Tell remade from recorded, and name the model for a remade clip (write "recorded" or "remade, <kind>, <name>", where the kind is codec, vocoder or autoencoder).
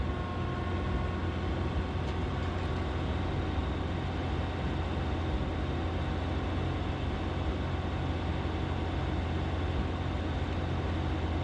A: recorded